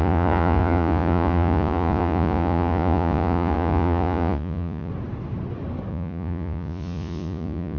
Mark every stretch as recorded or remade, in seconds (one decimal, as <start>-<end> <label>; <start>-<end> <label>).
0.0-4.9 remade; 4.9-5.9 recorded; 5.9-7.8 remade